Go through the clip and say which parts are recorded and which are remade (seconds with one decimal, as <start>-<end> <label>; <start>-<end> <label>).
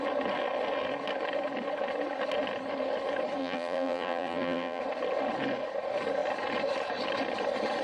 0.0-3.4 recorded; 3.4-4.8 remade; 4.8-7.8 recorded